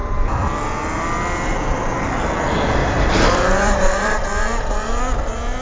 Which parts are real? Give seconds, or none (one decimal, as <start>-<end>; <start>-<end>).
0.0-2.8; 4.2-5.6